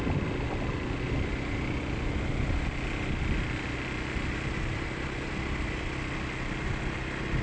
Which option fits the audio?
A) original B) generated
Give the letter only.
A